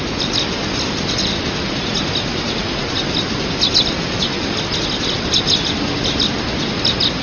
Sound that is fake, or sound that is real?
real